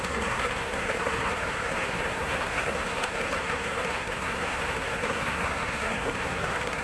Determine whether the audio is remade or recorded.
remade